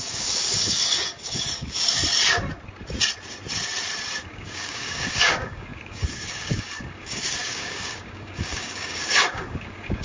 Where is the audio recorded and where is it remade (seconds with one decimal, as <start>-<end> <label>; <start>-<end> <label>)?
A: 0.0-2.0 remade; 2.0-4.2 recorded; 4.2-10.0 remade